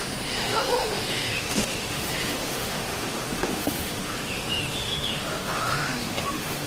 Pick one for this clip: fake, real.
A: fake